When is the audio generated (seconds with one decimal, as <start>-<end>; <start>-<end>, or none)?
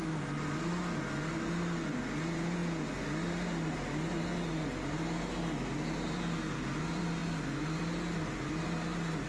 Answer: none